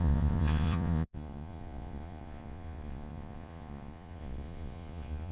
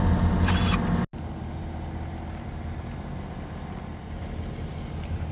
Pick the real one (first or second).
second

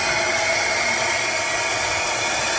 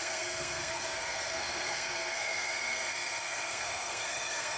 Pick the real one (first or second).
first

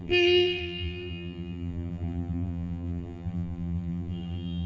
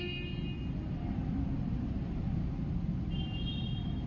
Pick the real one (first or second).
second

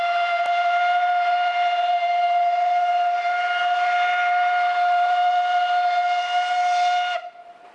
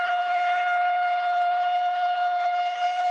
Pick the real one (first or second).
first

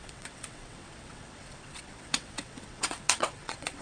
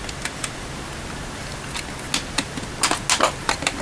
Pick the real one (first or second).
second